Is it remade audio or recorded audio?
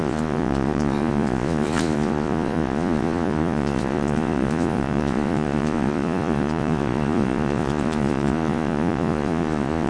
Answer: remade